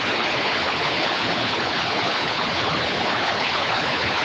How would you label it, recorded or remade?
remade